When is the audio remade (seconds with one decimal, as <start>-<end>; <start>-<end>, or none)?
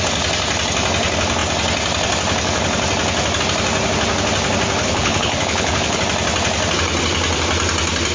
4.8-6.0